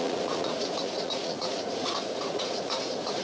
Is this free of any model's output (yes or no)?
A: no